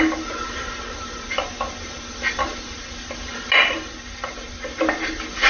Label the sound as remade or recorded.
recorded